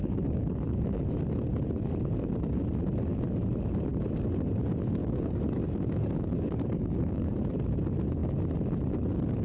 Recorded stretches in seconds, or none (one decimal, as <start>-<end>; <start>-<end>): 1.0-5.0; 7.5-9.4